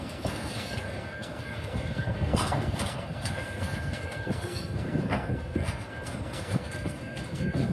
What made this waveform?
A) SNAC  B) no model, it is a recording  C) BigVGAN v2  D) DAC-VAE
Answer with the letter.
A